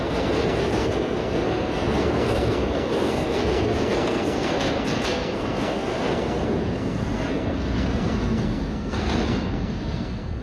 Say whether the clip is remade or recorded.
remade